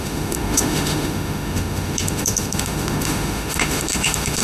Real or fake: fake